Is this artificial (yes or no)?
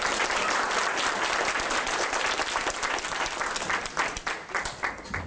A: no